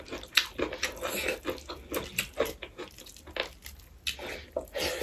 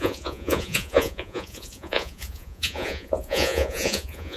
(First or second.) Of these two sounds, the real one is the first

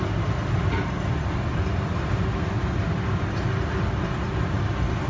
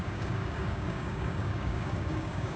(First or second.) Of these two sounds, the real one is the first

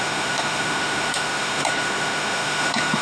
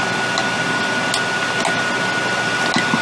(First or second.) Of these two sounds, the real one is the second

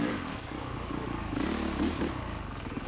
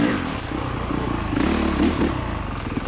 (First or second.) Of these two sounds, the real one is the second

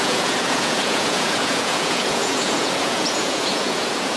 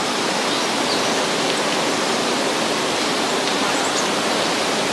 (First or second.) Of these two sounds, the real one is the second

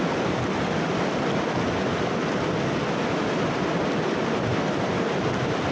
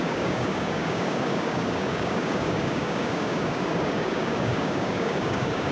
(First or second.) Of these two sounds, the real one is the first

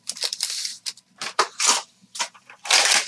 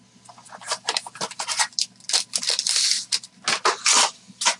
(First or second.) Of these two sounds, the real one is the second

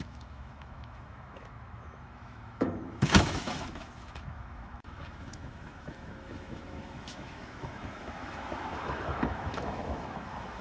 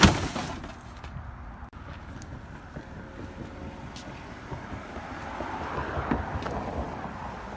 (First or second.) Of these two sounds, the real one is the second